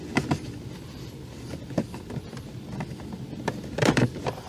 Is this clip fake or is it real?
real